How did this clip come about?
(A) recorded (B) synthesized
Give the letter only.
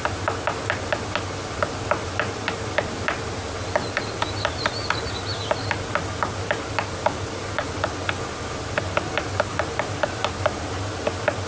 A